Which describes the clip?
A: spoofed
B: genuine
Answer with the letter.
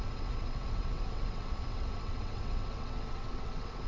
A